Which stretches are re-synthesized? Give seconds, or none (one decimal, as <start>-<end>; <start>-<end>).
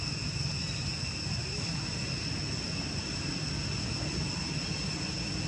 none